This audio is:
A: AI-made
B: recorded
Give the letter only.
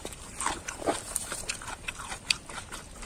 A